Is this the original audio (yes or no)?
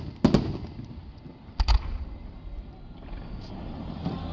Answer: yes